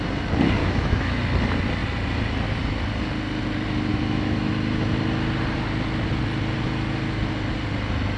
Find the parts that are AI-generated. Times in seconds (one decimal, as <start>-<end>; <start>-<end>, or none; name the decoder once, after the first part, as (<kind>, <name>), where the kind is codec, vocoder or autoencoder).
0.6-1.2 (autoencoder, DAC-VAE); 3.9-4.5